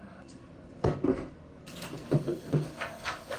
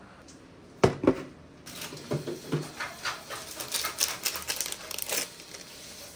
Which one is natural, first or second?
second